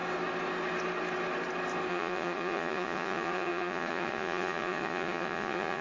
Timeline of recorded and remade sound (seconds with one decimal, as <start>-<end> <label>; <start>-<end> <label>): 0.0-1.9 recorded; 1.9-5.8 remade